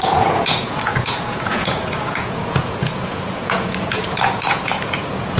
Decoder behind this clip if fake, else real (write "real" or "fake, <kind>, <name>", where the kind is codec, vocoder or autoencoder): fake, vocoder, Vocos